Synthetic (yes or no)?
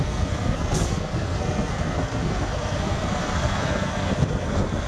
yes